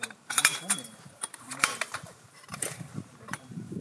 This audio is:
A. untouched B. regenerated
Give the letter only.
B